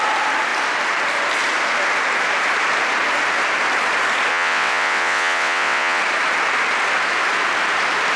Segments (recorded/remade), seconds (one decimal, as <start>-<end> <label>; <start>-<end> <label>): 0.0-4.3 recorded; 4.3-6.0 remade; 6.0-8.2 recorded